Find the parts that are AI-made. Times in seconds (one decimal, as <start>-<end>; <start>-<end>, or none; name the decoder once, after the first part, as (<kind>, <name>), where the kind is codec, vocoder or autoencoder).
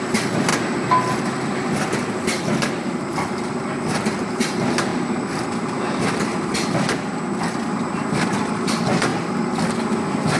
0.0-0.5 (vocoder, BigVGAN v2); 1.4-4.9; 6.0-10.4